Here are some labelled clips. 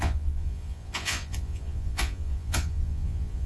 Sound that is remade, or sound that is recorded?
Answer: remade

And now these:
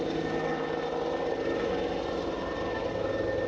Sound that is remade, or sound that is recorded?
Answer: recorded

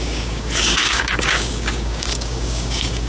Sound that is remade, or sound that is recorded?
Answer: remade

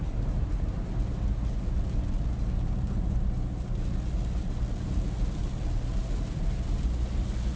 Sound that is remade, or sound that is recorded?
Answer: recorded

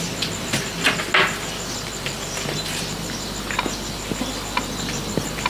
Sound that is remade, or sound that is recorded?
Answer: recorded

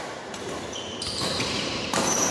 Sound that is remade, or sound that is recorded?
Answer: remade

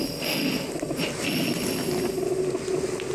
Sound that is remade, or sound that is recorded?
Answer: recorded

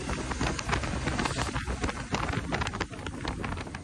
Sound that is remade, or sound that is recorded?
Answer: recorded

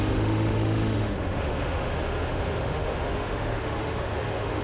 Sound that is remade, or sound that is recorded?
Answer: remade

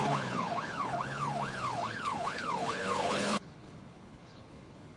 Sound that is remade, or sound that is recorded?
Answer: remade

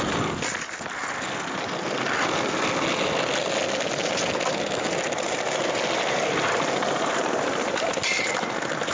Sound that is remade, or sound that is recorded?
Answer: recorded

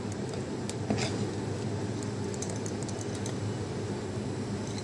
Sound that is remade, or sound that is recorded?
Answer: recorded